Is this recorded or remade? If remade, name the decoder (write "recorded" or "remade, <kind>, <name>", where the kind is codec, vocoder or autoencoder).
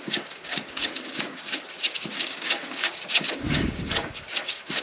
remade, codec, DAC